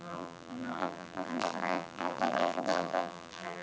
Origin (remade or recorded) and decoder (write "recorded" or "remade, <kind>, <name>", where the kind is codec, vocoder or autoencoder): remade, vocoder, BigVGAN v2